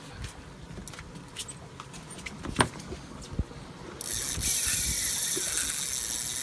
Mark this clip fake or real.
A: real